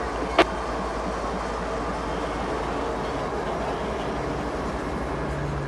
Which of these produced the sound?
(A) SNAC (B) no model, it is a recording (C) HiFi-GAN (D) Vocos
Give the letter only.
B